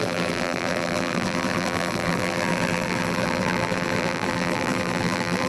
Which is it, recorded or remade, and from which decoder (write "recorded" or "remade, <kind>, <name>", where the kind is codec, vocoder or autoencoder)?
remade, vocoder, BigVGAN v2